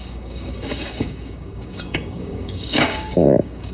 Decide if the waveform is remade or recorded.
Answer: remade